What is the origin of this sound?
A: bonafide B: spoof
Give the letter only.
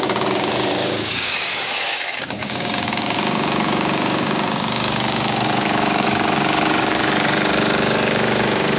B